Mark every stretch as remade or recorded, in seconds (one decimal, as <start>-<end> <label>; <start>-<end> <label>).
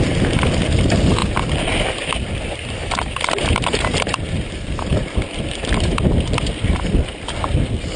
0.0-8.0 recorded